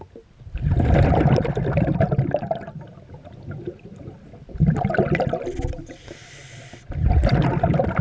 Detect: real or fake real